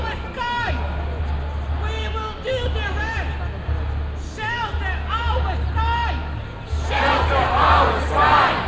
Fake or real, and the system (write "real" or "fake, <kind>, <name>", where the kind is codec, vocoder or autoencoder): real